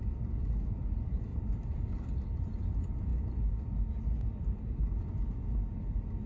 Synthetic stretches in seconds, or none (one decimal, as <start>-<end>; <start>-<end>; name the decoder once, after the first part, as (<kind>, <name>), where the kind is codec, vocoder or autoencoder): none